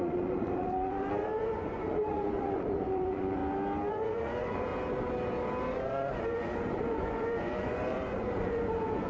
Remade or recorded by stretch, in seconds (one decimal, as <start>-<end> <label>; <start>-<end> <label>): 0.0-3.4 remade; 3.4-3.9 recorded; 3.9-4.7 remade; 4.7-5.7 recorded; 5.7-9.1 remade